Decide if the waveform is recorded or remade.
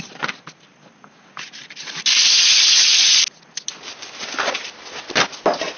recorded